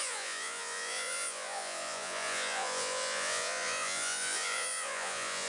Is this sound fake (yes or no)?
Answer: yes